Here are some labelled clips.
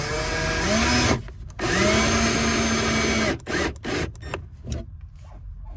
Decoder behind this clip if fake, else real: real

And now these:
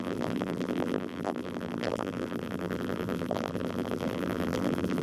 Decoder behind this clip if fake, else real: fake, vocoder, BigVGAN v2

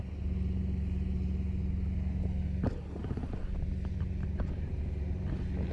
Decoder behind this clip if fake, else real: real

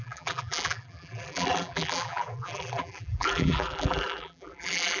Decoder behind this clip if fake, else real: fake, vocoder, BigVGAN v2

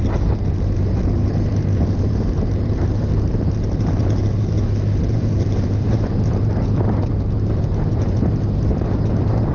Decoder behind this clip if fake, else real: fake, vocoder, BigVGAN v2